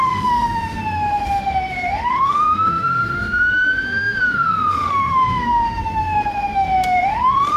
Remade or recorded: remade